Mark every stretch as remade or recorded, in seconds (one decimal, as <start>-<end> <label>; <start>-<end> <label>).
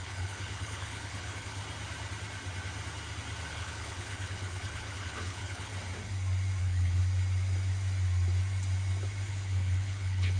0.0-1.6 remade; 1.6-3.5 recorded; 3.5-5.7 remade; 5.7-6.6 recorded; 6.6-7.0 remade; 7.0-9.3 recorded; 9.3-10.4 remade